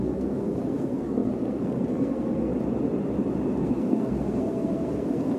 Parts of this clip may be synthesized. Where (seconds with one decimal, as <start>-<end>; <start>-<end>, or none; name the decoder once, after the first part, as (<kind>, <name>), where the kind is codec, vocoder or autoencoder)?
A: 0.0-2.5 (codec, SNAC); 3.6-5.4